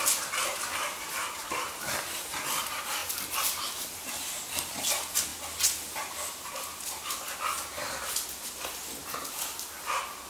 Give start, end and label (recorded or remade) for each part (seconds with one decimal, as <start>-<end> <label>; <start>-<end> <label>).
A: 0.0-10.3 recorded